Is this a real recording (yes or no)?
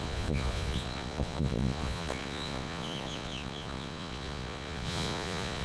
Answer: no